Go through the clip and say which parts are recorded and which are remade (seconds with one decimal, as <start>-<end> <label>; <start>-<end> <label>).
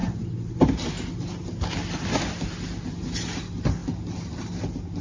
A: 0.0-3.8 recorded; 3.8-5.0 remade